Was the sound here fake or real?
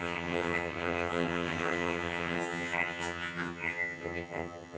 fake